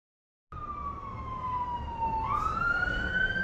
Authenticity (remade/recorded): recorded